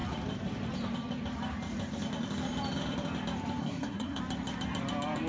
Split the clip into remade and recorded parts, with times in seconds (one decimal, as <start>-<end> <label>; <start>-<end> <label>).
0.0-3.6 recorded; 3.6-4.2 remade; 4.2-5.3 recorded